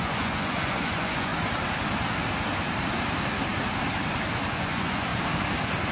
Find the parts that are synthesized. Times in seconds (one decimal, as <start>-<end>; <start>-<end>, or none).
0.0-1.3; 4.5-5.1